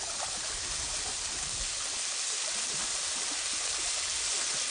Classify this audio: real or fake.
real